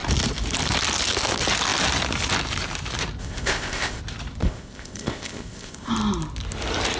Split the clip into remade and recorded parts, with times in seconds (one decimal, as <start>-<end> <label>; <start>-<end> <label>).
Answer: 0.0-3.2 recorded; 3.2-4.0 remade; 4.0-4.4 recorded; 4.4-5.9 remade; 5.9-7.0 recorded